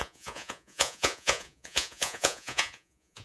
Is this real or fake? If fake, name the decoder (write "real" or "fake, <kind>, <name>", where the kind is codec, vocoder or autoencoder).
fake, vocoder, Vocos